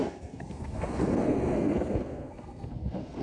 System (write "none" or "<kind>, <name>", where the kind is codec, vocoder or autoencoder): codec, SNAC